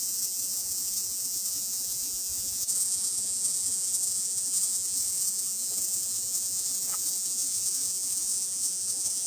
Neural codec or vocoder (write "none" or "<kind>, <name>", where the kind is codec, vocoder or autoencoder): vocoder, Vocos